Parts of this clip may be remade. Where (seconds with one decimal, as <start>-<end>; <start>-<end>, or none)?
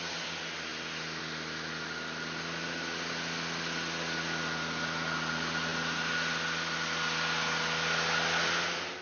none